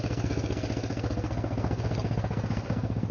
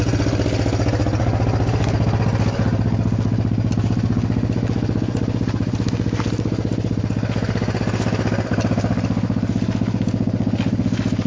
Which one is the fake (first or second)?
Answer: first